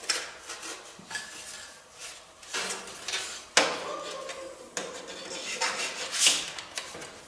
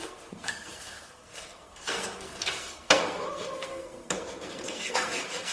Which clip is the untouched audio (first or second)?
first